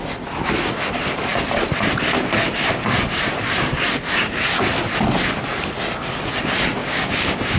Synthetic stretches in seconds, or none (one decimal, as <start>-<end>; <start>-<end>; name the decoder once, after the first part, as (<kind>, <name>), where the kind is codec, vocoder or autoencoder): 6.8-7.6 (codec, DAC)